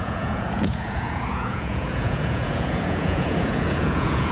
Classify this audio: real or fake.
fake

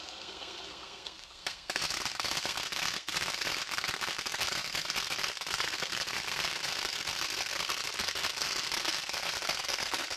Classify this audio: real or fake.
fake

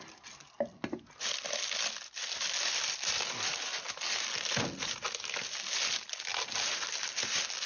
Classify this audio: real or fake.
real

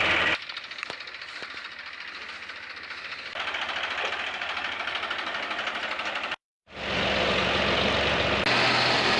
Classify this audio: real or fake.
real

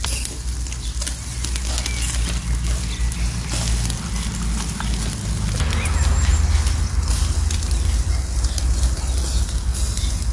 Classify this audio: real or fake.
real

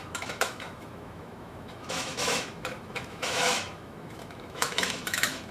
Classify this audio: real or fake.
fake